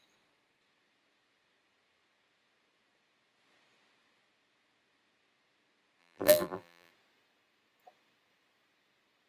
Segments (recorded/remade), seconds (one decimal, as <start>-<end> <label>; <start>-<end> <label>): 0.0-6.0 recorded; 6.0-6.9 remade; 6.9-9.3 recorded